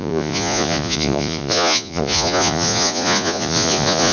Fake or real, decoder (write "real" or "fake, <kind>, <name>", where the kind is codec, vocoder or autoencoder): fake, vocoder, Vocos